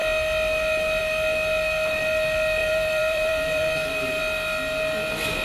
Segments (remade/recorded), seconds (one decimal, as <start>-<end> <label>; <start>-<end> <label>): 0.0-2.6 recorded; 2.6-4.2 remade; 4.2-5.4 recorded